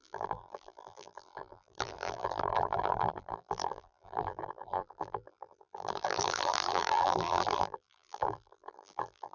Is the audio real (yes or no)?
no